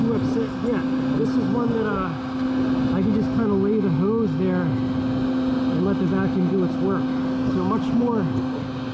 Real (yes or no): yes